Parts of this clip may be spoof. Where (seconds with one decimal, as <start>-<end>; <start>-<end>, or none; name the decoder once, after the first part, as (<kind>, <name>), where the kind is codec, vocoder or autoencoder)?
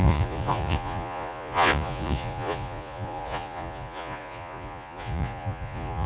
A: 0.0-6.1 (vocoder, Vocos)